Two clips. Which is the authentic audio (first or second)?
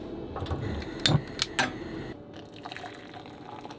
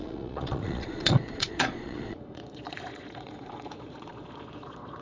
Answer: first